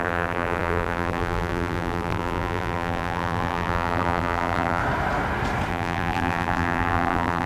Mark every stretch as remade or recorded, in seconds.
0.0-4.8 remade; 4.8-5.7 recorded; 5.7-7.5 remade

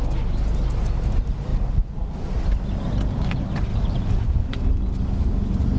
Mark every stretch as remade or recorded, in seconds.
0.0-1.5 recorded; 1.5-2.3 remade; 2.3-3.7 recorded; 3.7-4.4 remade; 4.4-5.8 recorded

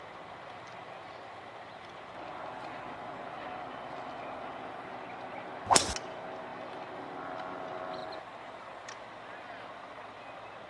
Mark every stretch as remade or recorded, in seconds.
0.0-8.0 recorded; 8.0-8.9 remade; 8.9-10.7 recorded